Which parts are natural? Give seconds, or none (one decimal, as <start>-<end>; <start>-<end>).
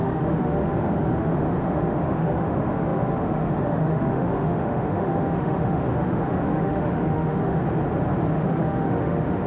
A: 7.6-8.2